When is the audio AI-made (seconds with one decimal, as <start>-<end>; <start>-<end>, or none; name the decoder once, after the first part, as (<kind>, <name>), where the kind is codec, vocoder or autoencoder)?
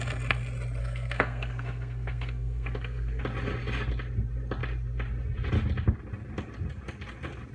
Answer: 0.8-3.2 (codec, SNAC)